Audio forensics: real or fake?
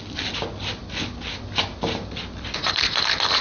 real